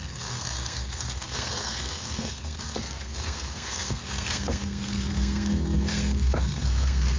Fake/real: fake